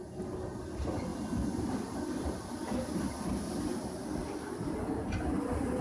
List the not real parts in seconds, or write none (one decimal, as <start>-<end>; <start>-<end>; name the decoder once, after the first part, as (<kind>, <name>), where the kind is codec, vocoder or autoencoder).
none